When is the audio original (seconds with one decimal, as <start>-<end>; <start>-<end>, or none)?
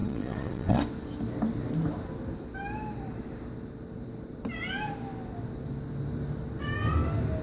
0.8-7.4